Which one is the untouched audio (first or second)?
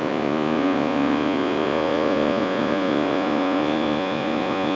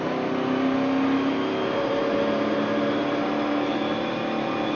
second